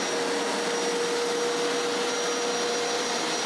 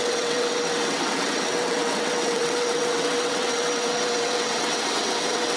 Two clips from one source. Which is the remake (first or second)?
second